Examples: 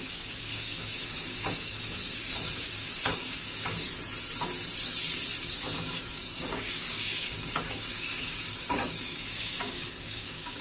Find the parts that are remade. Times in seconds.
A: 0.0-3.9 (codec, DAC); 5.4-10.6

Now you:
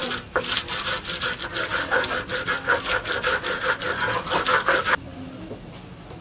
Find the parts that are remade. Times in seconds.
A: none

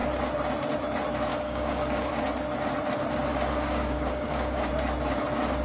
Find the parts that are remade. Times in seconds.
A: 1.3-2.1 (codec, DAC); 3.3-4.7

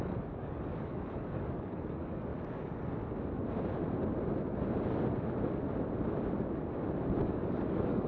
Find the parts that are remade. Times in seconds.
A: 0.0-2.3 (codec, DAC); 7.2-8.1

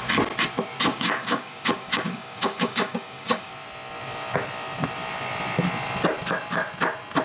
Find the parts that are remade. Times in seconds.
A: 0.9-3.5 (codec, DAC)

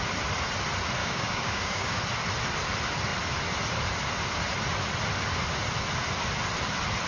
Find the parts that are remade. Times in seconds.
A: 1.0-2.0 (codec, DAC)

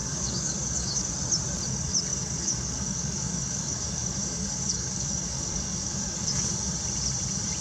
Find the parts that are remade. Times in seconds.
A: 0.0-1.1 (codec, DAC); 2.1-6.5

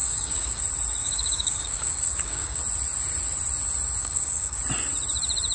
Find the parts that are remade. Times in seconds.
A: 0.0-0.6 (codec, DAC); 1.0-2.6; 4.0-4.6